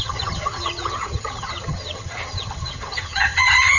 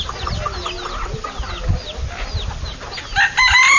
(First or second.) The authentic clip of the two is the second